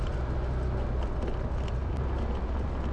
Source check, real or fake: real